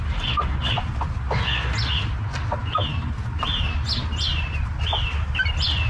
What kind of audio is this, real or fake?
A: real